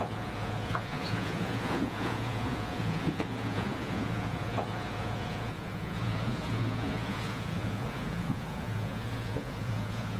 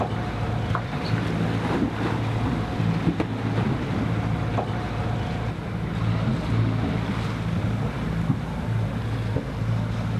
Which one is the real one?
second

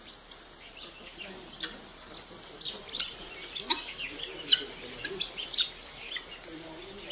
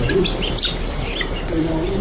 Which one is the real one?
first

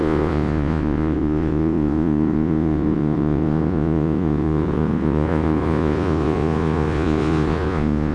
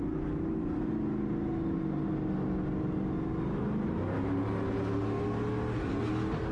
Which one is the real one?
second